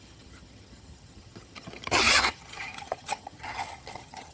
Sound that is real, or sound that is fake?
fake